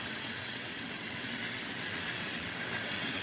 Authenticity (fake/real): fake